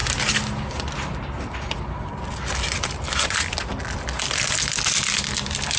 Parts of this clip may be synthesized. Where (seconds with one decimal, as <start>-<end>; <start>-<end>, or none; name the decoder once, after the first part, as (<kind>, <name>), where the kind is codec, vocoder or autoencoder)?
none